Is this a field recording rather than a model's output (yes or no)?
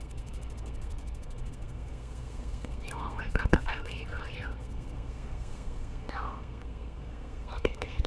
no